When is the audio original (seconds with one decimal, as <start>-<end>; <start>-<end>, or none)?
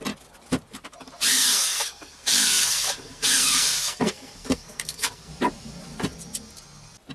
0.0-1.3; 5.3-7.1